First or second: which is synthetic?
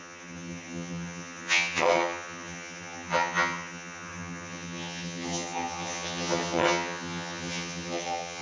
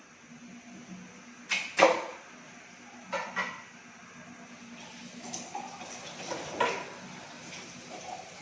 first